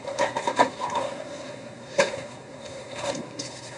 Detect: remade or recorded remade